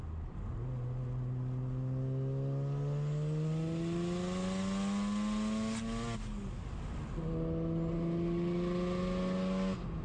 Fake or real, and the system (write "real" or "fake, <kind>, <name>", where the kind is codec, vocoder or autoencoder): real